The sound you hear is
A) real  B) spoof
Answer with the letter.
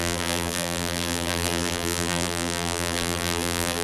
B